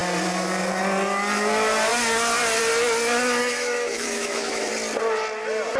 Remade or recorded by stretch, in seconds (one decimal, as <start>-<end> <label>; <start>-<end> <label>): 0.0-3.4 recorded; 3.4-4.7 remade; 4.7-5.8 recorded